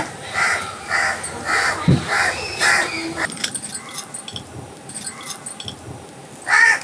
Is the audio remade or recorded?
recorded